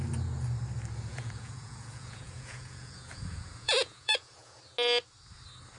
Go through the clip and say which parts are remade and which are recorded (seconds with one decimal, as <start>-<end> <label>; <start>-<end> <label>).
0.0-1.1 recorded; 1.1-4.6 remade; 4.6-5.8 recorded